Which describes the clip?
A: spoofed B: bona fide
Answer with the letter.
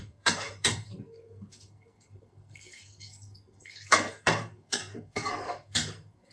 A